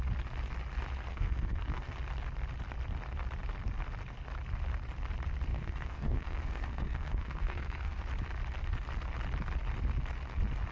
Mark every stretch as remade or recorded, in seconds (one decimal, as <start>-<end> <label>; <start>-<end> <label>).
0.0-1.1 recorded; 1.1-1.9 remade; 1.9-5.5 recorded; 5.5-8.0 remade; 8.0-10.7 recorded